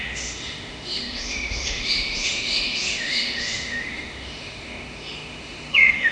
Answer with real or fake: fake